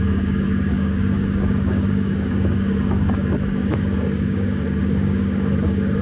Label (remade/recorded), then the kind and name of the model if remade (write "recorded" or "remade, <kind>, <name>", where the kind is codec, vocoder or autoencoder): remade, codec, DAC